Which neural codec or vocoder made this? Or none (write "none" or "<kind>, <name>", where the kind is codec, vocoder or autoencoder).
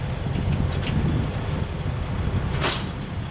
none